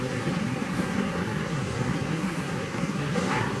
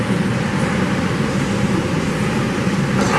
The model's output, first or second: first